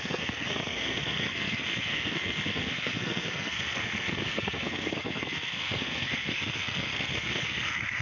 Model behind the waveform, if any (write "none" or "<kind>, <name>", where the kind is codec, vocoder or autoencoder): codec, SNAC